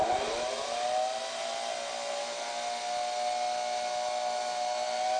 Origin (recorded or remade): recorded